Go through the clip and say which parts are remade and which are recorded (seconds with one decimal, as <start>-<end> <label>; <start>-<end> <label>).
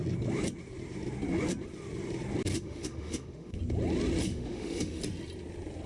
0.0-2.5 recorded; 2.5-3.6 remade; 3.6-4.2 recorded; 4.2-5.0 remade; 5.0-5.9 recorded